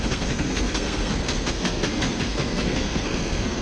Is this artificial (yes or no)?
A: yes